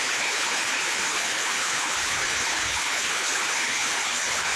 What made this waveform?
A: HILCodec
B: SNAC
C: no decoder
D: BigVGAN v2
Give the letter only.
A